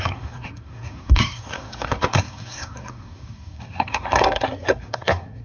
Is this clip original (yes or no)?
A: no